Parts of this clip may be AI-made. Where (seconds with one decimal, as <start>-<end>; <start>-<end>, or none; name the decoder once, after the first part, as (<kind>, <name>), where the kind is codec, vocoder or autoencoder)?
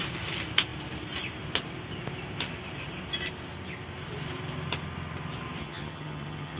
5.6-6.6 (vocoder, HiFi-GAN)